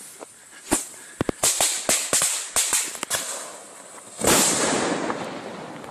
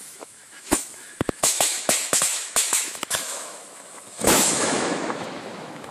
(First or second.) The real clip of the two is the first